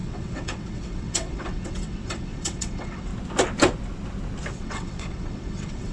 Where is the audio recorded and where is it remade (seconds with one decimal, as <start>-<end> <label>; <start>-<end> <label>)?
0.0-3.1 remade; 3.1-4.5 recorded; 4.5-5.9 remade